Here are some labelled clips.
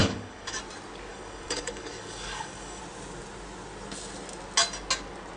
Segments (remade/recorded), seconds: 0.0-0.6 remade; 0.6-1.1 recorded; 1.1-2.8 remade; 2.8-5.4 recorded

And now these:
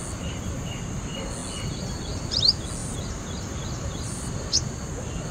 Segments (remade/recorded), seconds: 0.0-2.8 recorded; 2.8-4.6 remade; 4.6-5.3 recorded